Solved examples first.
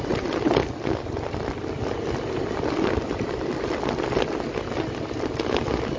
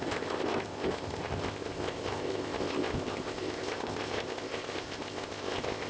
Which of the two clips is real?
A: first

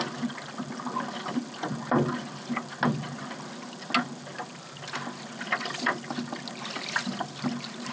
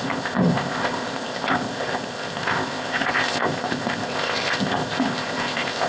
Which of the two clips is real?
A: first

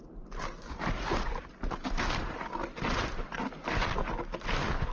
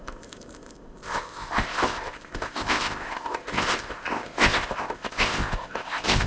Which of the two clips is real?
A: first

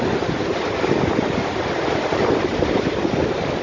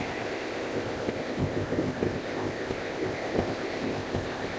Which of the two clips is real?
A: first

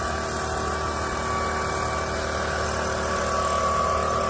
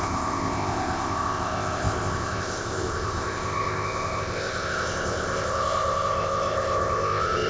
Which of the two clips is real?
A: first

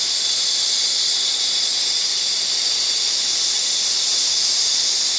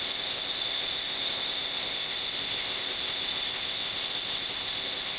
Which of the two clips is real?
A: first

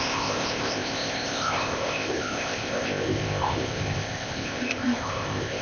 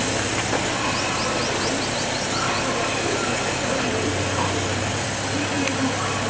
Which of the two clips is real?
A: second